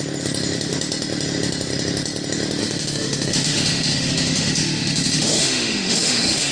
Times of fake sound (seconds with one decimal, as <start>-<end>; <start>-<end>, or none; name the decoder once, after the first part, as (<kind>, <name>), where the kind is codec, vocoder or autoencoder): 2.6-6.5 (autoencoder, DAC-VAE)